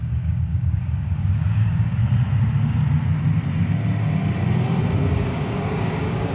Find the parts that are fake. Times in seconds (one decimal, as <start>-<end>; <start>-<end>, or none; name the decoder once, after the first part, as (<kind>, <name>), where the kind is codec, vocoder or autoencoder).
0.0-2.0 (codec, DAC); 5.2-6.3